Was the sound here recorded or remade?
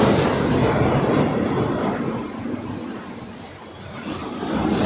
recorded